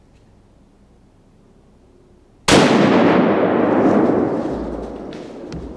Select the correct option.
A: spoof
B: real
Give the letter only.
B